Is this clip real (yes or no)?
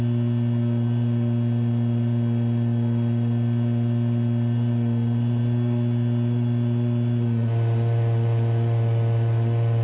yes